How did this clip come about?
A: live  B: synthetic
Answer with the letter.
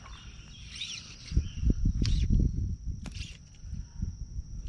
A